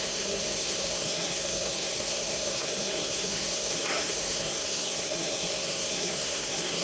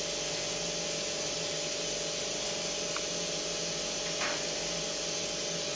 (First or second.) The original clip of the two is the second